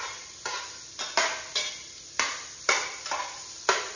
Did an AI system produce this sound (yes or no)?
no